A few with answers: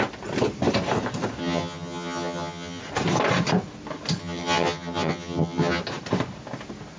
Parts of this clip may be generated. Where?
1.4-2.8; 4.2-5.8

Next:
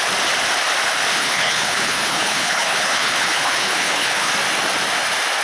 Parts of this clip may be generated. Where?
1.1-4.3

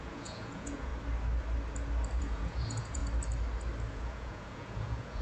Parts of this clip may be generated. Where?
0.0-0.9; 2.2-3.0; 3.9-5.2

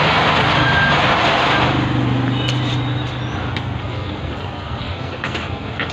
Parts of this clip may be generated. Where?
3.5-5.9